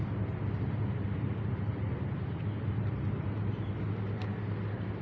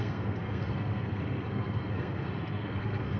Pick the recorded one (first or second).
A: first